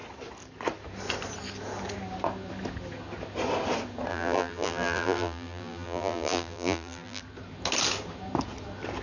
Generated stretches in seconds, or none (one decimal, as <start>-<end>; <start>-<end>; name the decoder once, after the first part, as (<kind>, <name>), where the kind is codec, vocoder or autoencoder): 4.1-7.2 (vocoder, BigVGAN v2)